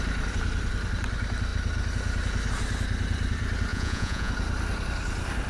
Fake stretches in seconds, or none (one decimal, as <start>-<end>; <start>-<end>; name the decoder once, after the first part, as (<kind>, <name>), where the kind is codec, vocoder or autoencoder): 3.7-4.3 (vocoder, Vocos)